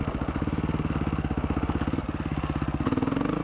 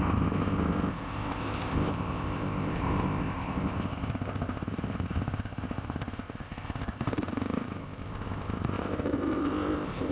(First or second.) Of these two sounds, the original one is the first